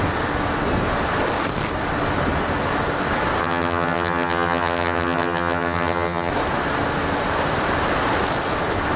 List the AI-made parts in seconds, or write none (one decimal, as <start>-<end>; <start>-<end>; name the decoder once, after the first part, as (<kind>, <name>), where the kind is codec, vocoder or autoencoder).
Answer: 3.4-6.3 (vocoder, HiFi-GAN)